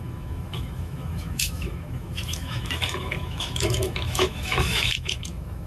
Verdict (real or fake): fake